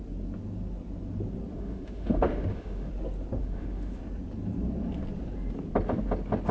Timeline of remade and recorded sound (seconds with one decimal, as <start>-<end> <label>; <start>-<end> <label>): 0.0-1.5 recorded; 1.5-2.9 remade; 2.9-3.4 recorded; 3.4-4.0 remade; 4.0-6.5 recorded